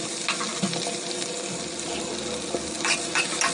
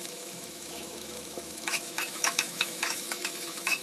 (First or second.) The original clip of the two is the first